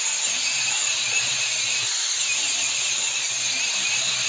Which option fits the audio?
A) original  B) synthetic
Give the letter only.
A